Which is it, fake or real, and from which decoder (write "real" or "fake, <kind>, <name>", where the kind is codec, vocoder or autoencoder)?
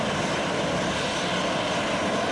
real